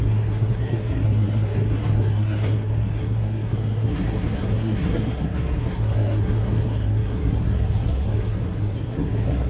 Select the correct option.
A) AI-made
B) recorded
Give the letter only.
A